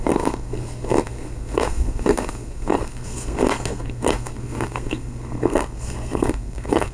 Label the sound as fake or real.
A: fake